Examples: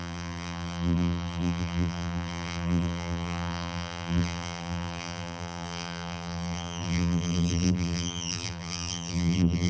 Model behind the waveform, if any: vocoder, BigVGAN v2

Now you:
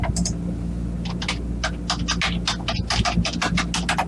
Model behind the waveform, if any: none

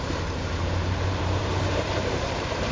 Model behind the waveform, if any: vocoder, BigVGAN v2